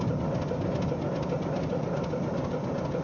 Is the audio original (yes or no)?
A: yes